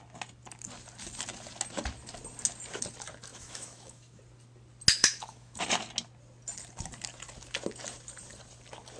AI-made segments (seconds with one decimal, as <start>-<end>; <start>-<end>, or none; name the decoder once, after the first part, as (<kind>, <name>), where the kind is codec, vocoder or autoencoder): 3.3-4.2 (autoencoder, DAC-VAE); 5.0-5.6